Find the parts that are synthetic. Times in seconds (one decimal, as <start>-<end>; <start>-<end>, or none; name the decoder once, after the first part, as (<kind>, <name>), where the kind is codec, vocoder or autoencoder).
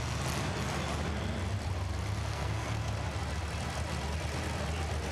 2.3-2.9 (codec, SNAC)